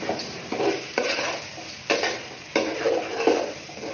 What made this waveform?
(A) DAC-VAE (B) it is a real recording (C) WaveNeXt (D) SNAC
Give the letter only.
B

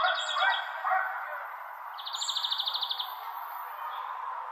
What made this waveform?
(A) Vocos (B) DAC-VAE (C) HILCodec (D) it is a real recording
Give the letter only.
D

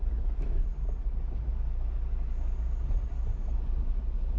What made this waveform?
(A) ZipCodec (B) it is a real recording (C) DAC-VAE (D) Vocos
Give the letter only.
B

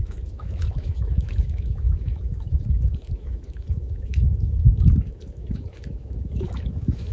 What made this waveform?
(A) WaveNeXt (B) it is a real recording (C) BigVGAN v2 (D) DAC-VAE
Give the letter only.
D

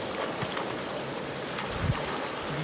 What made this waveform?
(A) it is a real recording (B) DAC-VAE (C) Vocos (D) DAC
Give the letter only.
A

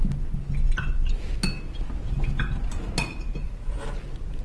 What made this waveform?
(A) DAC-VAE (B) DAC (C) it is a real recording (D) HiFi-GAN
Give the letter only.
C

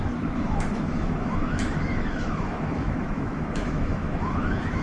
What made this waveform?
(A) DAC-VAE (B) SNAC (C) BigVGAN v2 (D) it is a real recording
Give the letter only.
A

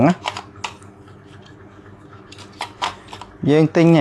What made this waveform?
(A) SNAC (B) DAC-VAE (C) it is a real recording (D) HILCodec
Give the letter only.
C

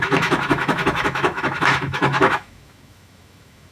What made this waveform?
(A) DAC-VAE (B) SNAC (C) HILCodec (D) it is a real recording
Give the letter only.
A